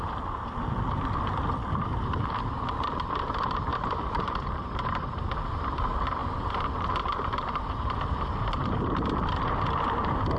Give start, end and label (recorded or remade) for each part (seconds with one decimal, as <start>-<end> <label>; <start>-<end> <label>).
0.0-3.7 recorded; 3.7-5.2 remade; 5.2-6.2 recorded; 6.2-9.4 remade; 9.4-10.4 recorded